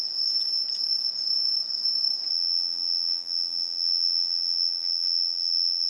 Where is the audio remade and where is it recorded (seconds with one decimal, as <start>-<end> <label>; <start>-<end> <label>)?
0.0-2.3 recorded; 2.3-5.9 remade